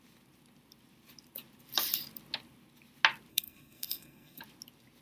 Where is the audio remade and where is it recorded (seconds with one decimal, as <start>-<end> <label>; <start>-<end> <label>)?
0.0-3.3 recorded; 3.3-4.4 remade; 4.4-5.0 recorded